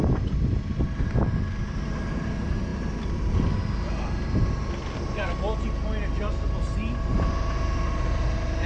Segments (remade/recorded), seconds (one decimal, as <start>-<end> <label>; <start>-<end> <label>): 0.0-8.7 recorded